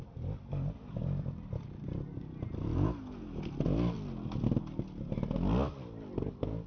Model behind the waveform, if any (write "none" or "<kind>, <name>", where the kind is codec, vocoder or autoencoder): none